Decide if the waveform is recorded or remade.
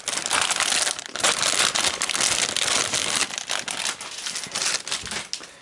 recorded